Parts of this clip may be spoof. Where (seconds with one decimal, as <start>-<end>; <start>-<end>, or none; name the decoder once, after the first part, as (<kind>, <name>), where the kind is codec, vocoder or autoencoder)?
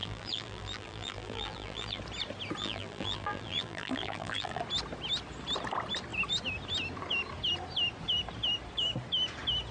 0.0-2.0 (vocoder, BigVGAN v2); 2.6-4.6